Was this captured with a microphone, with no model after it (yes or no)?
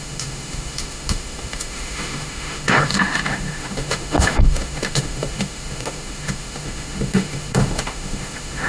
no